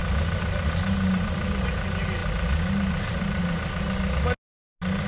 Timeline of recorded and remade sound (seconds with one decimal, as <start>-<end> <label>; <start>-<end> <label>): 0.0-5.1 recorded